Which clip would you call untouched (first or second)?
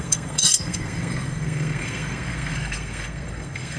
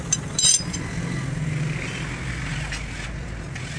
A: second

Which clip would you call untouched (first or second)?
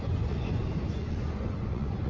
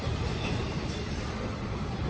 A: second